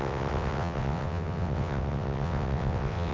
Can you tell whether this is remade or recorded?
remade